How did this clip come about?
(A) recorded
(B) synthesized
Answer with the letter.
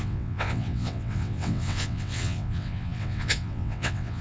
B